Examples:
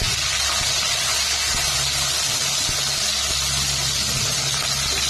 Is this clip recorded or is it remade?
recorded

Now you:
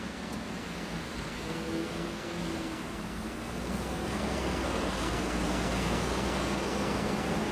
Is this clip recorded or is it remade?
remade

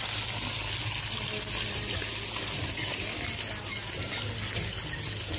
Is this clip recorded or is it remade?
recorded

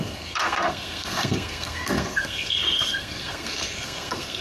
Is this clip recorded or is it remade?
remade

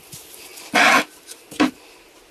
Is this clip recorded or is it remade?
recorded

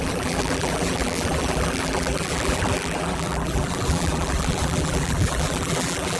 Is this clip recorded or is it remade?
remade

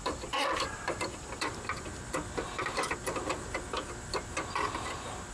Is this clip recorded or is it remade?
remade